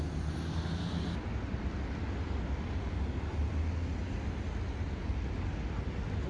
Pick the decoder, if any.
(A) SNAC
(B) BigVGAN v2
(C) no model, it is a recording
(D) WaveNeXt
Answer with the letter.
C